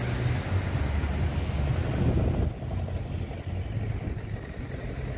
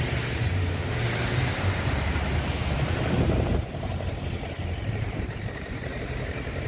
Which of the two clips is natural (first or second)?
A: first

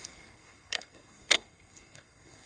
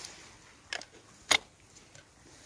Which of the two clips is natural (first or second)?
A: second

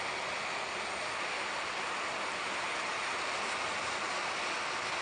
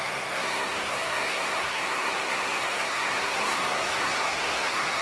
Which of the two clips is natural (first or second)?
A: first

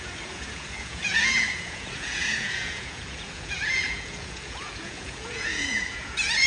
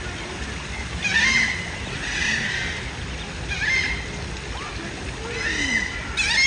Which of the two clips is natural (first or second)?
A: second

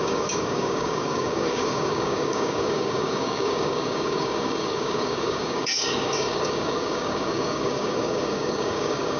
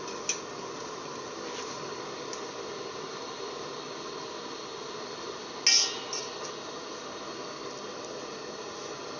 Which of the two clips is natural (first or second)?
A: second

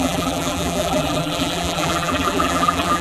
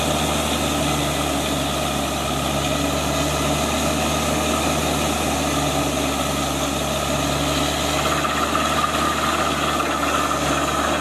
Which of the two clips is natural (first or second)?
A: second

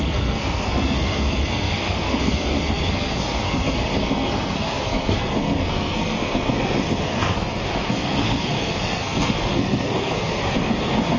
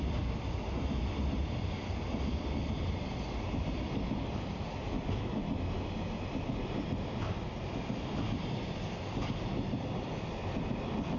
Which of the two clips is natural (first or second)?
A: second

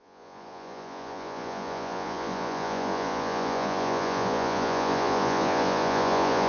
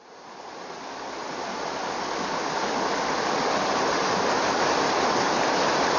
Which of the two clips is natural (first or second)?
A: second